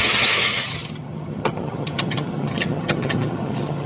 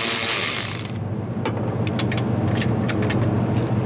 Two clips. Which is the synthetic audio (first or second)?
first